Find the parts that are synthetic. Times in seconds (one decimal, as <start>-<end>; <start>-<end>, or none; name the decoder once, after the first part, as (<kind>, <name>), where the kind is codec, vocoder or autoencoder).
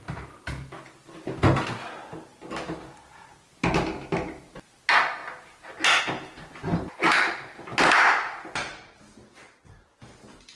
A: none